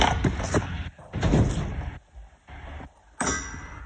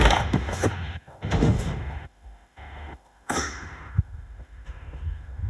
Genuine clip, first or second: first